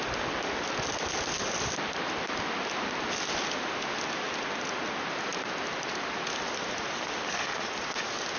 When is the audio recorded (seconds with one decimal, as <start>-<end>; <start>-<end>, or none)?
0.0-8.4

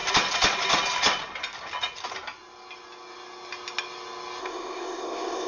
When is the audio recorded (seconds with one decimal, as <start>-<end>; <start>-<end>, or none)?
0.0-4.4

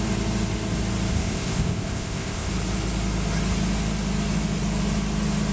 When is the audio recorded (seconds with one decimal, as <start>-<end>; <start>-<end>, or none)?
0.0-1.1; 2.5-5.5